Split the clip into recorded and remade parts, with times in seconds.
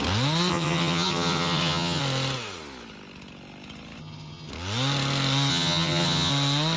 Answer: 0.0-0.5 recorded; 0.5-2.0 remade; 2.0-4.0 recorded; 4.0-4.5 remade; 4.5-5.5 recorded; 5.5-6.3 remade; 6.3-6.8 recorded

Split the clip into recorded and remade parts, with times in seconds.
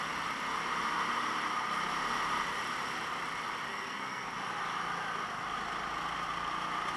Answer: 0.0-3.7 recorded; 3.7-4.3 remade; 4.3-7.0 recorded